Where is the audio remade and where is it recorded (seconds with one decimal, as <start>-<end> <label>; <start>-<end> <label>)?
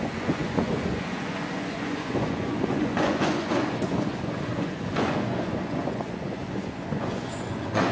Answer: 0.0-7.9 remade